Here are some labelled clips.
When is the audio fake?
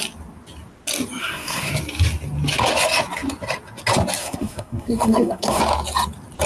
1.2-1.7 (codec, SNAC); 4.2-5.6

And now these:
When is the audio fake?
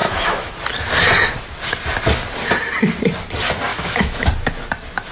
0.0-0.5 (autoencoder, DAC-VAE); 3.7-4.3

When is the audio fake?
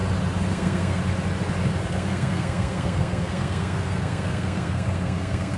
0.5-1.0 (codec, SNAC); 1.9-5.6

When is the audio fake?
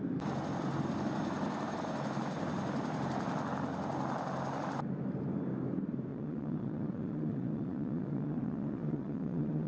6.1-9.7 (vocoder, Vocos)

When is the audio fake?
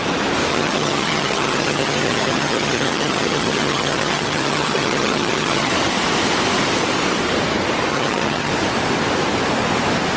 0.5-5.7 (vocoder, HiFi-GAN); 7.9-8.5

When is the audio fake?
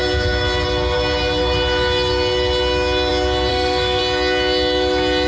3.5-4.0 (codec, SNAC)